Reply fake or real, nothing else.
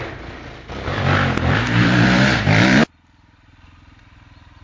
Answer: real